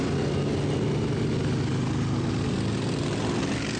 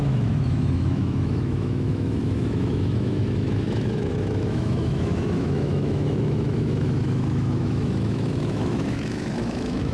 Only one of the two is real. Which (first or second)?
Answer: first